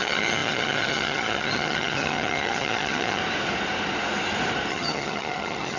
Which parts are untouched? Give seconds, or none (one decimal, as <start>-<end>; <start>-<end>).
3.2-4.7